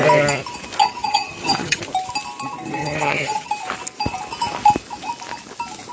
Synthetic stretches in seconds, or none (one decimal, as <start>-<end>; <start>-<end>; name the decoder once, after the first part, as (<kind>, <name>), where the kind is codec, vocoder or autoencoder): 0.8-1.8 (vocoder, HiFi-GAN); 2.8-3.5

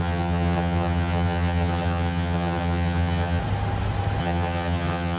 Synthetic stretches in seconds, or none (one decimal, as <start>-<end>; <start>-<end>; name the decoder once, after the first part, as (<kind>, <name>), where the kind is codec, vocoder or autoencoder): 0.0-3.4 (vocoder, HiFi-GAN); 4.2-5.2

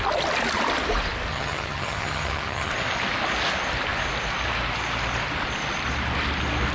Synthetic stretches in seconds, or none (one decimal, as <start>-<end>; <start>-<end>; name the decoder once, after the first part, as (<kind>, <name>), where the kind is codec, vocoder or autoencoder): 1.3-2.7 (vocoder, HiFi-GAN)

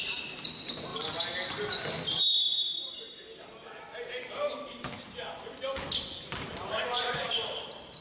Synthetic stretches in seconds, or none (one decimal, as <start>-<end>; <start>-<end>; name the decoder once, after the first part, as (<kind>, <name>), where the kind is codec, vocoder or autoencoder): none

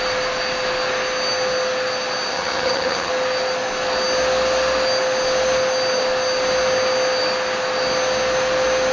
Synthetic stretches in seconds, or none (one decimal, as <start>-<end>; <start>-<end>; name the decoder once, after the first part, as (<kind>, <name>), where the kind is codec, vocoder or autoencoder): 2.3-3.1 (vocoder, HiFi-GAN)

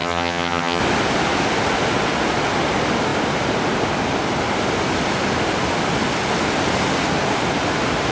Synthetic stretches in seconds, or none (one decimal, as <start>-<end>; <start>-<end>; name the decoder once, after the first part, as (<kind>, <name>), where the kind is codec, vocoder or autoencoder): 0.0-0.8 (vocoder, HiFi-GAN)

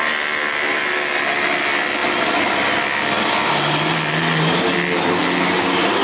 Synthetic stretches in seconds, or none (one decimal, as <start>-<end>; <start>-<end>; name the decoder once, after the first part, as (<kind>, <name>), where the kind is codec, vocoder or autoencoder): none

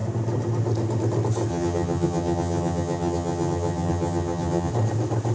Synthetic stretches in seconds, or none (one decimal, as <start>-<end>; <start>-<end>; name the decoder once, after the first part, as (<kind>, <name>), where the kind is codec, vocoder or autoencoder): 1.5-4.7 (vocoder, HiFi-GAN)